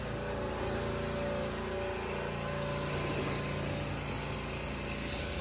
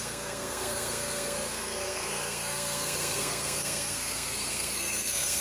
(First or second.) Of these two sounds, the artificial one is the second